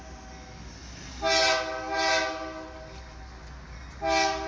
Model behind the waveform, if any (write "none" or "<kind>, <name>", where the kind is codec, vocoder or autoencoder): none